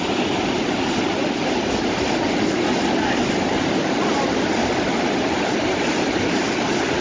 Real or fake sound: real